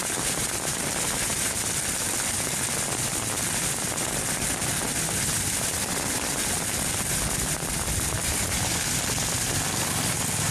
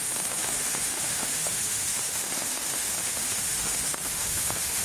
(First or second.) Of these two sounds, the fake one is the second